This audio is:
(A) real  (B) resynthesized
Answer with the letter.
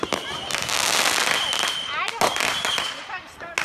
A